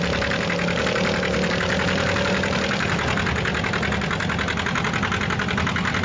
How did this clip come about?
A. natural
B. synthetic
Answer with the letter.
A